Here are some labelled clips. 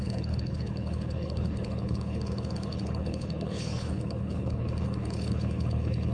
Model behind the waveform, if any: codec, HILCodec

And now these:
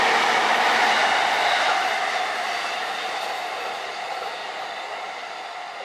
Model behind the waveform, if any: none